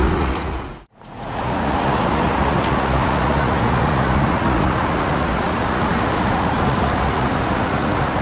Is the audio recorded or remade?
remade